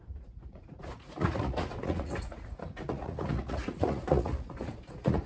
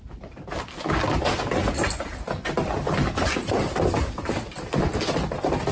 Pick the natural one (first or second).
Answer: second